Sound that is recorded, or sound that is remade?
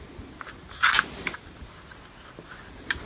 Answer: recorded